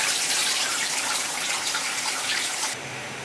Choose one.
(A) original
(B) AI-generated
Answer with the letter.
B